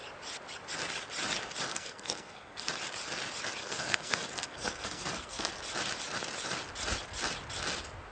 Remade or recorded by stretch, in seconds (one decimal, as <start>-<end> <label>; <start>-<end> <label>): 0.0-1.7 recorded; 1.7-2.7 remade; 2.7-3.6 recorded; 3.6-5.5 remade; 5.5-8.1 recorded